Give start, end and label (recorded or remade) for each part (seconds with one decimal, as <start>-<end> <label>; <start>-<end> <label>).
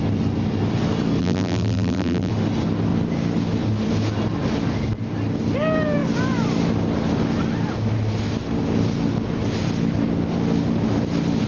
0.0-1.2 recorded; 1.2-2.3 remade; 2.3-11.5 recorded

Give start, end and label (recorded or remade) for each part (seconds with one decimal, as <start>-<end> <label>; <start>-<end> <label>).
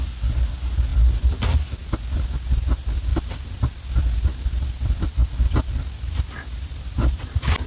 0.0-0.9 recorded; 0.9-1.4 remade; 1.4-3.1 recorded; 3.1-4.0 remade; 4.0-7.7 recorded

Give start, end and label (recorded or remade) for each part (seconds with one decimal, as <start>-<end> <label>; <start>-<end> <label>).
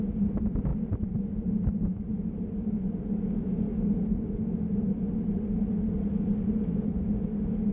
0.0-7.7 recorded